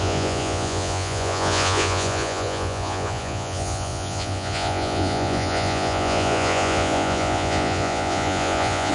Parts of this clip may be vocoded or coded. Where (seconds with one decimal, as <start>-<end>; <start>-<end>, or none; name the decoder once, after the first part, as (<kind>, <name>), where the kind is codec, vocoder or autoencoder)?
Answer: 0.0-8.9 (vocoder, Vocos)